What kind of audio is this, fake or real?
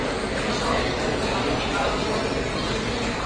real